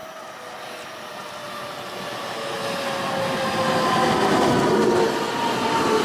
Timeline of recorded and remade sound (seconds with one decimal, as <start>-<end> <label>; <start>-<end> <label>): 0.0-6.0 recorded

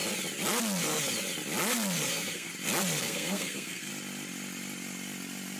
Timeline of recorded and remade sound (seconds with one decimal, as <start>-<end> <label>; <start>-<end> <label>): 0.0-2.1 recorded; 2.1-2.5 remade; 2.5-3.0 recorded; 3.0-3.9 remade; 3.9-5.6 recorded

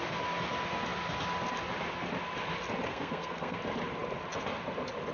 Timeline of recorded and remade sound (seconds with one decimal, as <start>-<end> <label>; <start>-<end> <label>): 0.0-2.9 recorded; 2.9-3.6 remade; 3.6-5.1 recorded

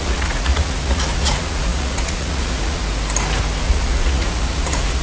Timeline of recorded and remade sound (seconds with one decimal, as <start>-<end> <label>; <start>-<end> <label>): 0.0-2.8 remade; 2.8-3.6 recorded; 3.6-5.0 remade